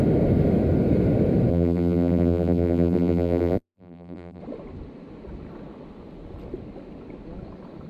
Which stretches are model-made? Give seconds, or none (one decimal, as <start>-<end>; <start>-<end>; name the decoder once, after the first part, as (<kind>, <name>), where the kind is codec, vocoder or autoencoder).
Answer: 1.5-4.4 (vocoder, BigVGAN v2)